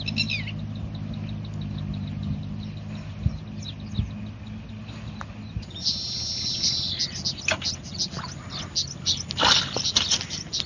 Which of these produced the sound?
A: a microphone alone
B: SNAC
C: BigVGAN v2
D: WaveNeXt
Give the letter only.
A